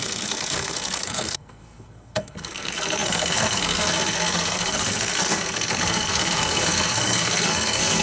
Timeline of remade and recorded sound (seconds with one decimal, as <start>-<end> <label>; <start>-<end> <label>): 0.0-8.0 remade